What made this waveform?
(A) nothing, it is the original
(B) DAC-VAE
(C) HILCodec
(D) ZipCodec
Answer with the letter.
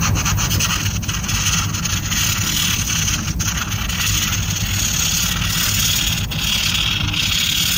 A